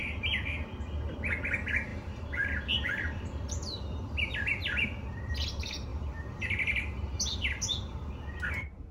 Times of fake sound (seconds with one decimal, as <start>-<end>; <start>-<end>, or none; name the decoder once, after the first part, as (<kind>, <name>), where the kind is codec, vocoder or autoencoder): 1.9-5.3 (vocoder, BigVGAN v2); 5.9-8.1